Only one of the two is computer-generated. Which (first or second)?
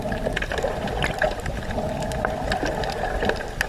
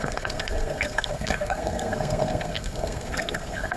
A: second